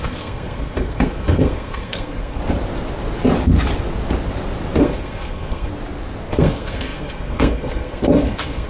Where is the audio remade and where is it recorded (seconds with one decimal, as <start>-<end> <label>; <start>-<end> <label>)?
0.0-2.4 remade; 2.4-4.8 recorded; 4.8-5.7 remade; 5.7-6.3 recorded; 6.3-8.7 remade